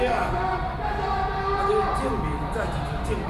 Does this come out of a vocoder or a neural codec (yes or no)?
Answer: no